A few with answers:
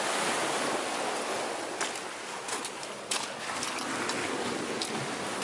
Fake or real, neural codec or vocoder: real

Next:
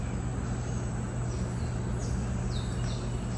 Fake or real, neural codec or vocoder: real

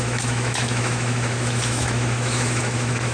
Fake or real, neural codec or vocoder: fake, autoencoder, DAC-VAE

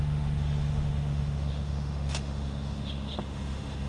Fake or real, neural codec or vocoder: fake, autoencoder, DAC-VAE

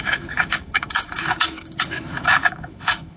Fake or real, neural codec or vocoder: fake, autoencoder, DAC-VAE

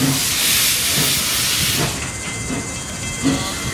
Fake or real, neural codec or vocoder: real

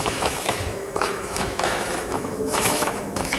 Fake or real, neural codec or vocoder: fake, autoencoder, DAC-VAE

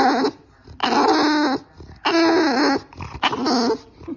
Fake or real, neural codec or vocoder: real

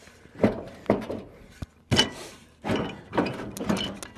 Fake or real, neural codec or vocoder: real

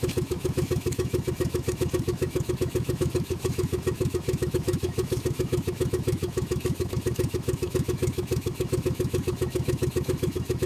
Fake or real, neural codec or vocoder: fake, autoencoder, DAC-VAE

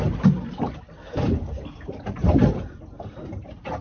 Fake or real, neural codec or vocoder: real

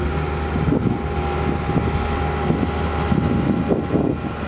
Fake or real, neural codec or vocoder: real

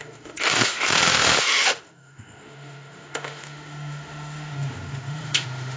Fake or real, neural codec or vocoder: fake, autoencoder, DAC-VAE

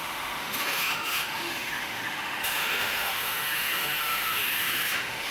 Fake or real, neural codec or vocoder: fake, autoencoder, DAC-VAE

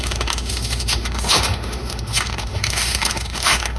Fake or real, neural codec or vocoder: fake, autoencoder, DAC-VAE